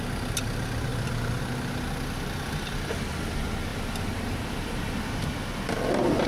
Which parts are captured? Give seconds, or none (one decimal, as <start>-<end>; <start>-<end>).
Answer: 0.0-0.9; 1.4-3.7; 4.9-6.3